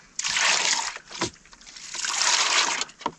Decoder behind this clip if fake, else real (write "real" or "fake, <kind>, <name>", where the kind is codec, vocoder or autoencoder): fake, vocoder, BigVGAN v2